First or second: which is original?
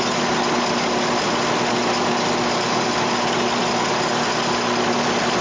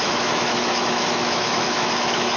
first